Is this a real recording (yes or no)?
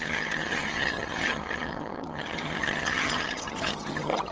no